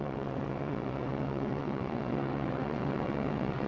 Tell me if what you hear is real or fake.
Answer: fake